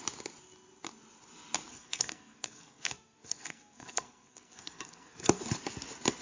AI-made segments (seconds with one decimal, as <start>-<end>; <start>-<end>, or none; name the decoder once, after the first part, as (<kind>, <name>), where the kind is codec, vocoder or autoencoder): 1.7-5.4 (codec, SNAC)